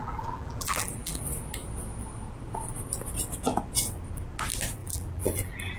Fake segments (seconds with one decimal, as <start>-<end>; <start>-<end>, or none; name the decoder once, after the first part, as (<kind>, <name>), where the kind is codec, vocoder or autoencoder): 0.0-1.2 (vocoder, BigVGAN v2); 4.8-5.8